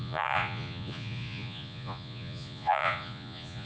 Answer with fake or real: fake